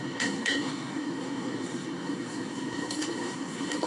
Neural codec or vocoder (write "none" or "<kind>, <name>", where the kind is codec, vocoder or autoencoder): codec, SNAC